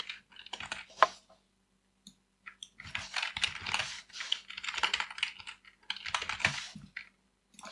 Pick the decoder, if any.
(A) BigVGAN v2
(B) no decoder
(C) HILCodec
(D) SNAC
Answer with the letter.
B